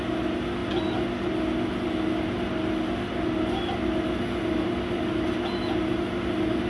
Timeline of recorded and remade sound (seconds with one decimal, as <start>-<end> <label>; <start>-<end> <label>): 0.0-6.7 recorded